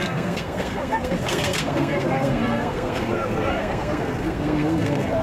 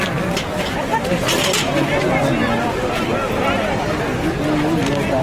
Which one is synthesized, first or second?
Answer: first